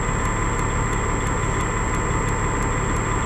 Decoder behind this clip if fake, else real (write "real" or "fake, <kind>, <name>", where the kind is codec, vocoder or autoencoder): real